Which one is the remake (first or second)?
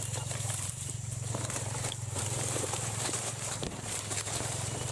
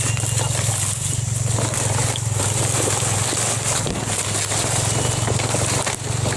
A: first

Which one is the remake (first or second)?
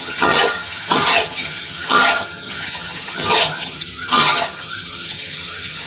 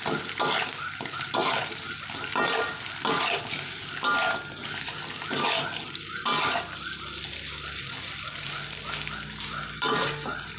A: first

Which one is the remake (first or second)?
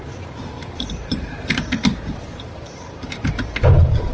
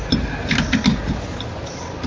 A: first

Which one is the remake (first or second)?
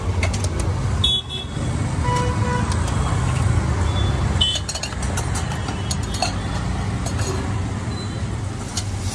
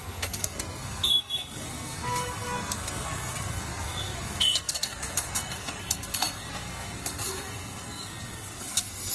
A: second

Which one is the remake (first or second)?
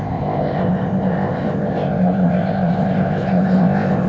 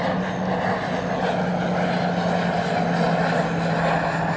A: first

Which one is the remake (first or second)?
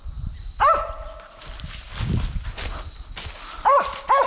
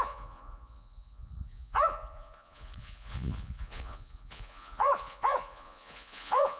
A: second